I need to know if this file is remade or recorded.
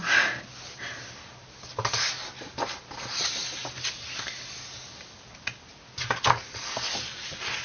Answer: recorded